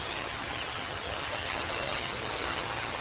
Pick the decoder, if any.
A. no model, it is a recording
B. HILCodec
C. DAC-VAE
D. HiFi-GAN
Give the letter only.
D